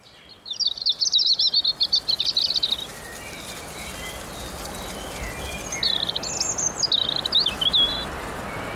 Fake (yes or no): no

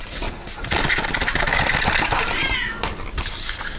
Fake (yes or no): no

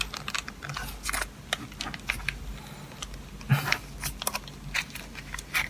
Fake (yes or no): no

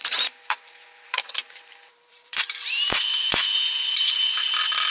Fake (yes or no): yes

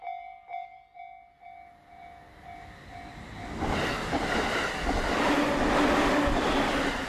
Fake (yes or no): no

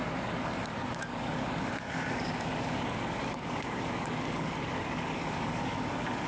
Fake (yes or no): yes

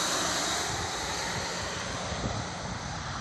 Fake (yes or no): no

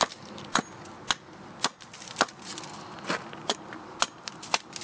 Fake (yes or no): no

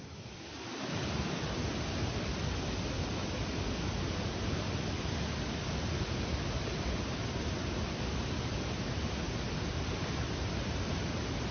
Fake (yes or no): no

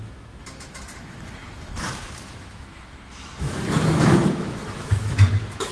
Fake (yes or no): yes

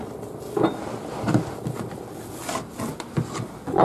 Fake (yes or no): no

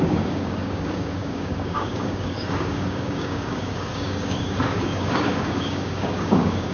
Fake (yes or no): yes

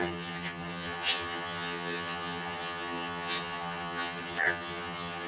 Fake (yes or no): yes